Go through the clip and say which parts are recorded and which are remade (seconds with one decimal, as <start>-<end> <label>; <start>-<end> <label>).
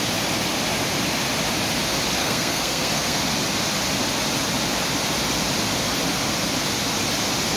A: 0.0-2.2 recorded; 2.2-3.2 remade; 3.2-7.6 recorded